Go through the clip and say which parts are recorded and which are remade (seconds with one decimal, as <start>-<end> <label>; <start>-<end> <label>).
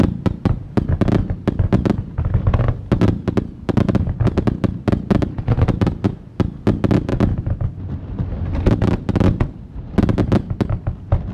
0.0-11.3 recorded